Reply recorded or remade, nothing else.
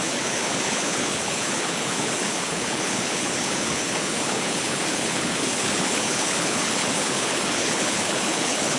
remade